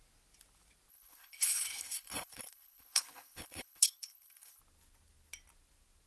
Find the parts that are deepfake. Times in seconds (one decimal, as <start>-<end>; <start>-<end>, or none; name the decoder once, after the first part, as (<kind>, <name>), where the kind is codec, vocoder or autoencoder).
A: 0.9-4.6 (codec, HILCodec)